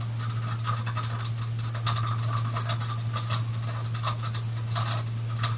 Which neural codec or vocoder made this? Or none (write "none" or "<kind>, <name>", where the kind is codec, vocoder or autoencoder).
none